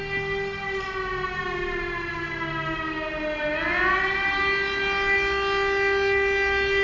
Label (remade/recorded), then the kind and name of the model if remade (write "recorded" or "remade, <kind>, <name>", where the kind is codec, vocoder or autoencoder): recorded